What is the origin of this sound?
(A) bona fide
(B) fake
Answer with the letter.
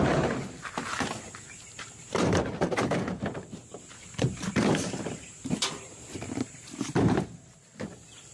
B